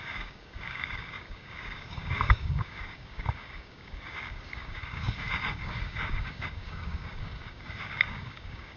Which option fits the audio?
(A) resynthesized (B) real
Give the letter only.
A